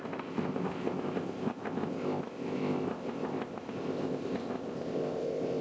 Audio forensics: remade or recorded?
remade